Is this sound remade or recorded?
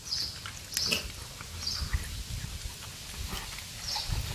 recorded